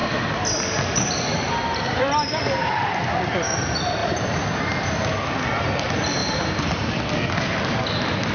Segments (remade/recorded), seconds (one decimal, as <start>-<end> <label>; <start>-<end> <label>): 0.0-4.0 recorded; 4.0-4.6 remade; 4.6-6.2 recorded; 6.2-7.0 remade; 7.0-8.3 recorded